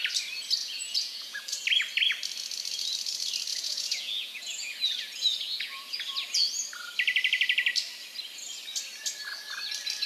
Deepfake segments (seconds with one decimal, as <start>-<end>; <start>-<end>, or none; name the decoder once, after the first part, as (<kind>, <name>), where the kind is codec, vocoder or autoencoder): 0.6-1.4 (vocoder, Vocos); 3.5-6.0